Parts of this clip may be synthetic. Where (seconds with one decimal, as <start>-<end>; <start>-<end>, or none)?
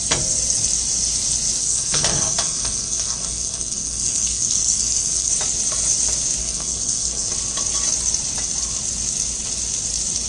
1.6-5.3; 6.4-7.3